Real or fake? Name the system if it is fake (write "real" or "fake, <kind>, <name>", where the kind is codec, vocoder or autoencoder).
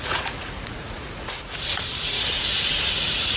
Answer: fake, vocoder, Vocos